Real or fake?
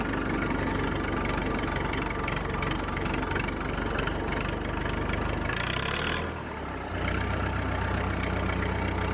real